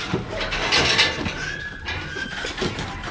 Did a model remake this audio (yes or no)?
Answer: no